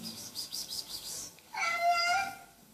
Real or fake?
fake